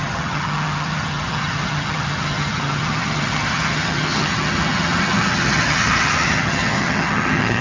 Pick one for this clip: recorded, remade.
remade